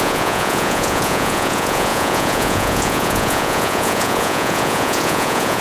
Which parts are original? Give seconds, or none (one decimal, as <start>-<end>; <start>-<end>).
none